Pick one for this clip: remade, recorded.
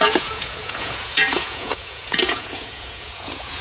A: remade